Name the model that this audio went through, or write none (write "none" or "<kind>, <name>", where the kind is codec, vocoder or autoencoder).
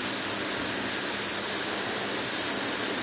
none